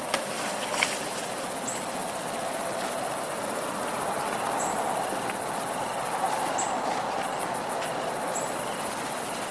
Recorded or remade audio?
recorded